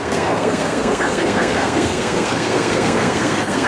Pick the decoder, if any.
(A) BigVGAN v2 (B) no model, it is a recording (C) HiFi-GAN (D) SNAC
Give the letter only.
D